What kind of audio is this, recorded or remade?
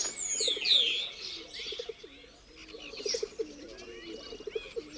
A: recorded